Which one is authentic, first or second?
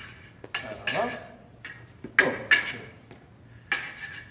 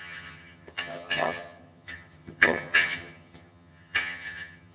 first